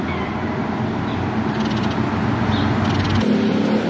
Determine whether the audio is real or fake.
real